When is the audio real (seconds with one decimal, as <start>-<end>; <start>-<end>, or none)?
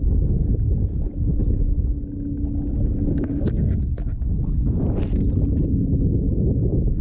1.4-5.5